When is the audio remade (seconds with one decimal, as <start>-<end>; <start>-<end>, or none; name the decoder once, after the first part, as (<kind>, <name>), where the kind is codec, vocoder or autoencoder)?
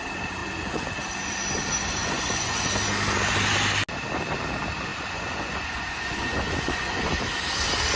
0.4-1.1 (vocoder, Vocos); 2.0-2.6; 4.9-7.1